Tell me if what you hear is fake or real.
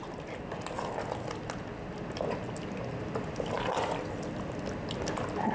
real